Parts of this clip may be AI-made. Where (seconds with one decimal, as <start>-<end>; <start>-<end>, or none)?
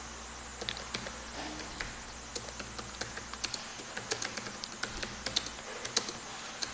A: none